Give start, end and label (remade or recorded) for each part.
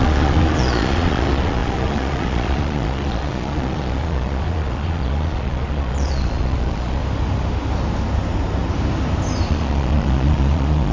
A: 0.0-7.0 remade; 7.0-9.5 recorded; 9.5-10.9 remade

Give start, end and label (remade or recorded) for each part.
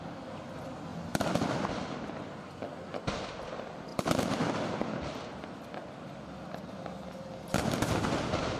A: 0.0-8.6 recorded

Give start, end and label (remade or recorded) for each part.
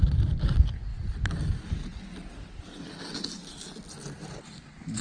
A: 0.0-5.0 recorded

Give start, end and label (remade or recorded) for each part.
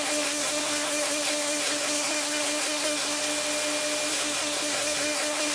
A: 0.0-3.2 remade; 3.2-4.1 recorded; 4.1-5.5 remade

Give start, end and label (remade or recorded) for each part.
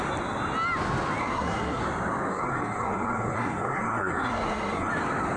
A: 0.0-1.2 recorded; 1.2-1.8 remade; 1.8-2.3 recorded; 2.3-4.9 remade; 4.9-5.4 recorded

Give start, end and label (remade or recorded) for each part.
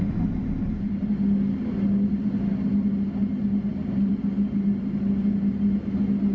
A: 0.0-6.3 recorded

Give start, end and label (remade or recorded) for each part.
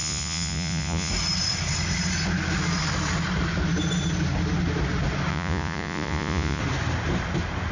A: 0.0-1.1 remade; 1.1-5.3 recorded; 5.3-6.6 remade; 6.6-7.7 recorded